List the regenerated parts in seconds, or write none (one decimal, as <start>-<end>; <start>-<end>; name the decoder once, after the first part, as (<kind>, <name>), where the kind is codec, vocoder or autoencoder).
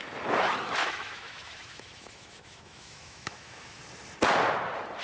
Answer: 0.8-3.8 (autoencoder, DAC-VAE)